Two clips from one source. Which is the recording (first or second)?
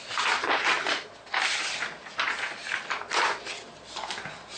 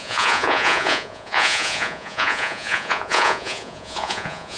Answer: first